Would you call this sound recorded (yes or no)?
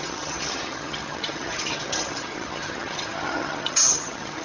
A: no